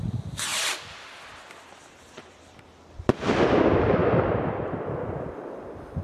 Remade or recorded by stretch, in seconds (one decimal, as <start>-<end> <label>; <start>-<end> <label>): 0.0-6.0 recorded